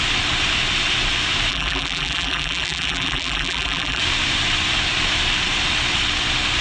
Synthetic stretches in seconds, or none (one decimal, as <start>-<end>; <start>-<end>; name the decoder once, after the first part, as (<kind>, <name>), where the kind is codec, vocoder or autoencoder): 1.5-4.0 (vocoder, BigVGAN v2)